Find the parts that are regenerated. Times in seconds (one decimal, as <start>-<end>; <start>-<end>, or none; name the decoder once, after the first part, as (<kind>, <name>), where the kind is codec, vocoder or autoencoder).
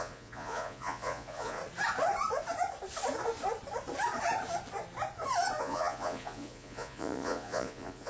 0.0-1.6 (vocoder, Vocos); 5.6-8.1